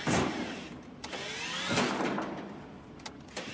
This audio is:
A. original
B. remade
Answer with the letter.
A